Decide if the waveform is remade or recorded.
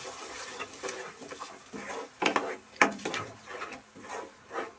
recorded